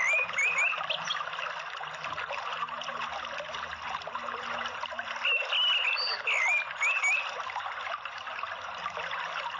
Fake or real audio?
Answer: real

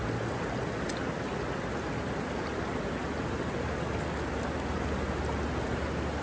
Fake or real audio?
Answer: real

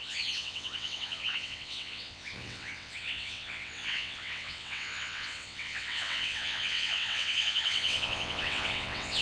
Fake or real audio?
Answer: fake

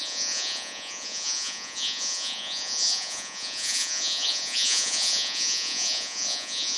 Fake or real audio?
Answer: fake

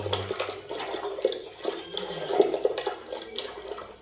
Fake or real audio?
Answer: real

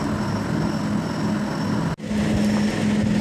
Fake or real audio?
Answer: real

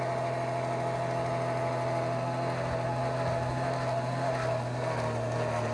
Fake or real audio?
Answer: real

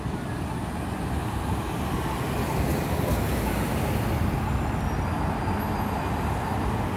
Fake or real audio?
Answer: real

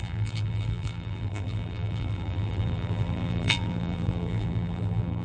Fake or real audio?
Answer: fake